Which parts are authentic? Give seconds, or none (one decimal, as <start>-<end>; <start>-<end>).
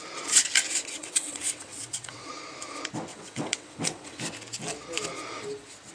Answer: 0.0-1.0; 2.3-3.1; 4.2-5.9